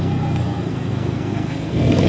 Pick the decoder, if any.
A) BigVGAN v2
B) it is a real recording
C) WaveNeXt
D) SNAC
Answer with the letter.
D